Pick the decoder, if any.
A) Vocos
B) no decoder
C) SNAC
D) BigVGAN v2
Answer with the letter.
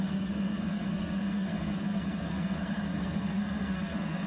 C